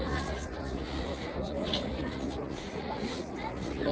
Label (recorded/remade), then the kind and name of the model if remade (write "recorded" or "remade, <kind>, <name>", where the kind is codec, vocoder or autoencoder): remade, vocoder, Vocos